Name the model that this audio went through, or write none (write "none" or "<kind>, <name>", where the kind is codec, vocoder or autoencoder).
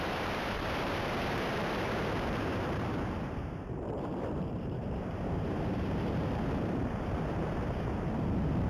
vocoder, BigVGAN v2